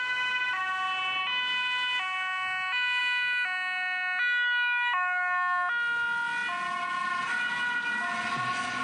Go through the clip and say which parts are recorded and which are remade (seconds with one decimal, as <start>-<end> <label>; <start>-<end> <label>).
0.0-8.8 recorded